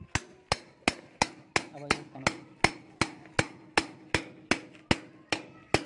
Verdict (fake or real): real